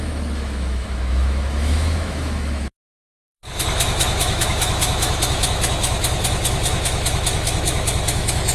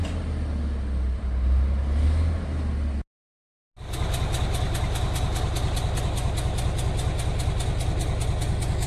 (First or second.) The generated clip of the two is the first